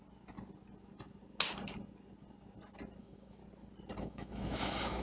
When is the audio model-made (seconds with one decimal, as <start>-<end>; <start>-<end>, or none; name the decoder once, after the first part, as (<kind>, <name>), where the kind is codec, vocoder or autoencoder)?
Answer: 3.0-3.4 (autoencoder, DAC-VAE); 4.0-5.0